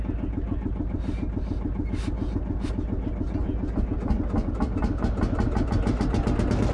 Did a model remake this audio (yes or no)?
no